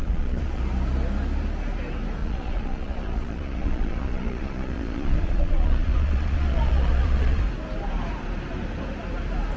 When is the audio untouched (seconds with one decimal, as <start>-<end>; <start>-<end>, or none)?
0.6-2.2; 7.4-9.6